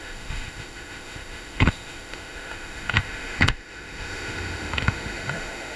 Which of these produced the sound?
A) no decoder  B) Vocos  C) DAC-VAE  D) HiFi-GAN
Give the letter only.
C